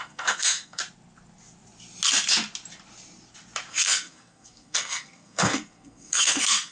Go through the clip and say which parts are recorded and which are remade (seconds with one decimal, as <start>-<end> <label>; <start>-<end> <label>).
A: 0.0-0.8 remade; 0.8-3.7 recorded; 3.7-6.7 remade